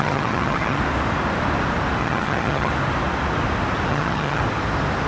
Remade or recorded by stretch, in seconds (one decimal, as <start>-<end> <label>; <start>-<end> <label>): 0.0-0.8 remade; 0.8-2.0 recorded; 2.0-2.7 remade; 2.7-3.9 recorded; 3.9-4.4 remade; 4.4-5.1 recorded

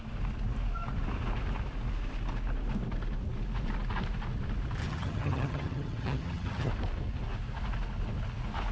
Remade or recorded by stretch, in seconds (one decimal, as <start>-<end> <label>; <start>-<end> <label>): 0.0-4.8 recorded; 4.8-6.7 remade; 6.7-8.7 recorded

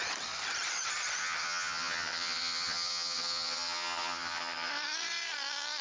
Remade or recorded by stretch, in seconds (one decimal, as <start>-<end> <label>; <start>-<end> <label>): 0.0-1.2 recorded; 1.2-4.7 remade; 4.7-5.8 recorded

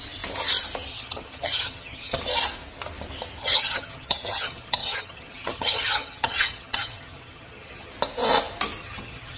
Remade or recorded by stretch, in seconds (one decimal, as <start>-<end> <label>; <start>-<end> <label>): 0.0-0.9 recorded; 0.9-2.2 remade; 2.2-3.4 recorded; 3.4-7.9 remade; 7.9-8.8 recorded; 8.8-9.4 remade

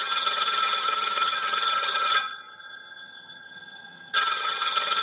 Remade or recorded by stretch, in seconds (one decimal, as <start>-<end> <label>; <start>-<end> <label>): 0.0-5.0 remade